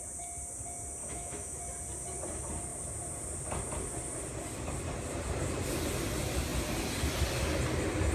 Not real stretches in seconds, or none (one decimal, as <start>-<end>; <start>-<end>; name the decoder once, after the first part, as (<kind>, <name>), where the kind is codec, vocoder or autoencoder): 1.0-1.6 (autoencoder, DAC-VAE)